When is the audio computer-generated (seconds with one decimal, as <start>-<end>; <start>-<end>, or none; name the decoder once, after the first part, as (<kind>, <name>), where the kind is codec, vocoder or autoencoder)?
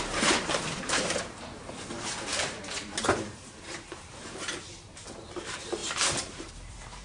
0.0-7.0 (vocoder, BigVGAN v2)